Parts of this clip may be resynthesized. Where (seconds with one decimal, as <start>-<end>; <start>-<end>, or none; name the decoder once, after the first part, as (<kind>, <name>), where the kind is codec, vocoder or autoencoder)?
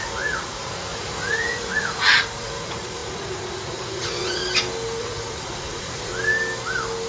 0.0-4.4 (vocoder, Vocos); 5.0-6.1